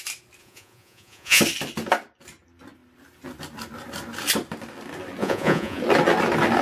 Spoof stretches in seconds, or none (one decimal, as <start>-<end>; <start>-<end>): 0.4-1.4; 5.2-5.8